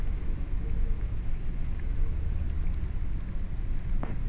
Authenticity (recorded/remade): recorded